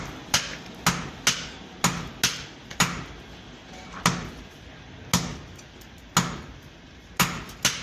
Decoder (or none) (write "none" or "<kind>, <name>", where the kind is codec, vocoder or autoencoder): none